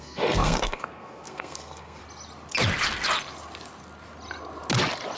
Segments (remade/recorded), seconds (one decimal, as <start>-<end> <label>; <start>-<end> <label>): 0.0-2.0 remade; 2.0-5.2 recorded